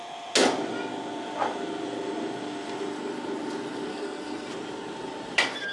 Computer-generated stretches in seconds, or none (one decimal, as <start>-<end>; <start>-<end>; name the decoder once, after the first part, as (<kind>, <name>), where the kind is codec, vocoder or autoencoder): 3.9-4.5 (codec, SNAC)